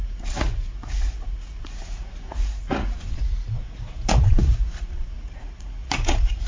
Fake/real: fake